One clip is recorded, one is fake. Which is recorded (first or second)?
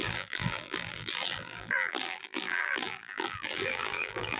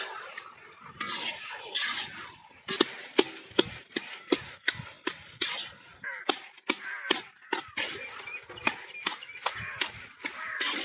second